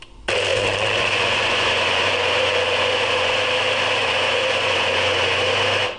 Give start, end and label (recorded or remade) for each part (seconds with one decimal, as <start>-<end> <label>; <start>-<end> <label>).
0.0-0.5 recorded; 0.5-3.4 remade; 3.4-4.0 recorded; 4.0-5.5 remade; 5.5-6.0 recorded